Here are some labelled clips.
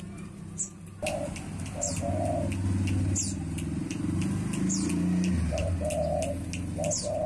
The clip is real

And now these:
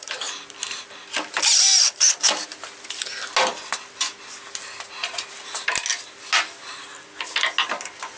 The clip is real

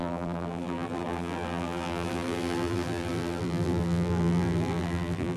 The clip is fake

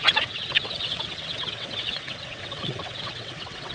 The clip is fake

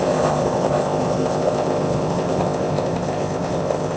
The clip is fake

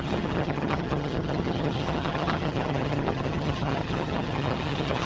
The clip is fake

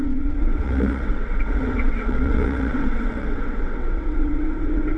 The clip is fake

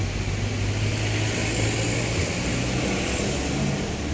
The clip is real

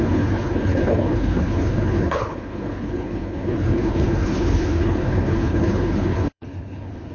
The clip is fake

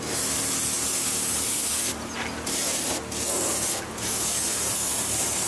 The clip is real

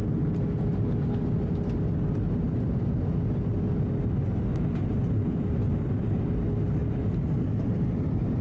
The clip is real